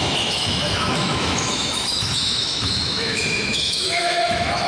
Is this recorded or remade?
remade